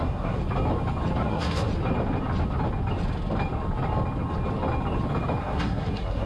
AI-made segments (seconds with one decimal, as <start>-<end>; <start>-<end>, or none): 0.0-0.4; 1.2-1.7; 5.4-6.3